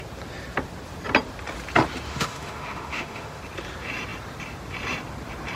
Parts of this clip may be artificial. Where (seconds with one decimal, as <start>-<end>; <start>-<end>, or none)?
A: 2.1-3.4

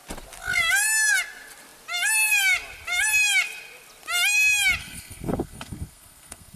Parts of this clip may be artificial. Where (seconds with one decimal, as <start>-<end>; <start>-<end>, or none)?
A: 4.8-6.6